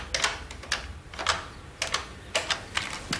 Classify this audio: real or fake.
real